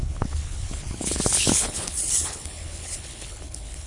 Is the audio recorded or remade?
remade